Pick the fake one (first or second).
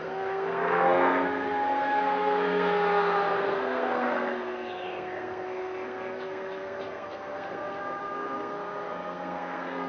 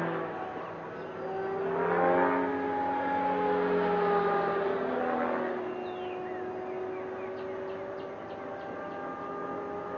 first